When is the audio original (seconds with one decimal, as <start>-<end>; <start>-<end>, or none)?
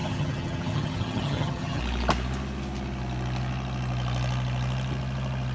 1.8-5.5